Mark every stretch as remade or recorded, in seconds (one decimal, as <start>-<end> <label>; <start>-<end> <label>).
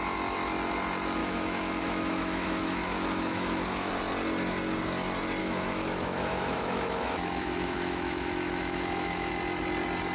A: 0.0-1.2 recorded; 1.2-3.9 remade; 3.9-5.4 recorded; 5.4-9.3 remade; 9.3-10.1 recorded